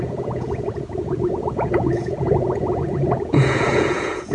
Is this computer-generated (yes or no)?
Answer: yes